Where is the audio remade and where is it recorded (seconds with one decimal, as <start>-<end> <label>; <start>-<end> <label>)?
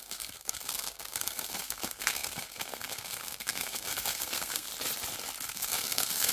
0.0-4.7 remade; 4.7-5.5 recorded; 5.5-6.3 remade